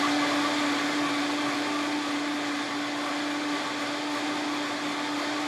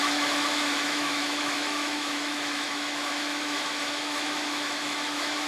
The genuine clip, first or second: first